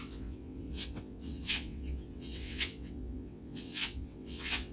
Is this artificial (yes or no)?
yes